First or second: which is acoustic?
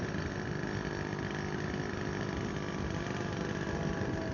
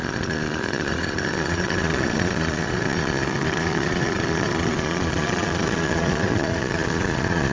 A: first